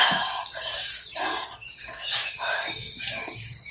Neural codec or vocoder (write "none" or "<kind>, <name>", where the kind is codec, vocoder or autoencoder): codec, DAC